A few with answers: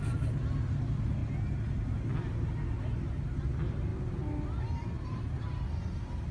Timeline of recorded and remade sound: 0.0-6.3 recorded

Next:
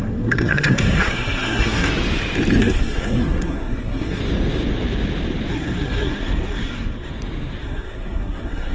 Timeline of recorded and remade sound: 0.0-1.9 remade; 1.9-2.6 recorded; 2.6-4.2 remade; 4.2-5.5 recorded; 5.5-7.1 remade; 7.1-7.6 recorded; 7.6-8.7 remade

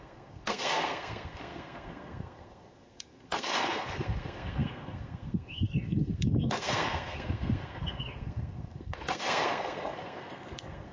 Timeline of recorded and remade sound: 0.0-10.9 remade

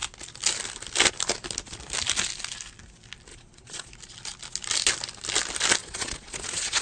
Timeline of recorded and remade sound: 0.0-3.3 recorded; 3.3-3.9 remade; 3.9-5.8 recorded; 5.8-6.8 remade

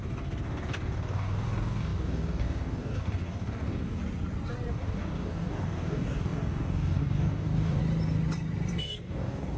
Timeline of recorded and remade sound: 0.0-4.0 remade; 4.0-4.7 recorded; 4.7-7.8 remade; 7.8-8.8 recorded; 8.8-9.6 remade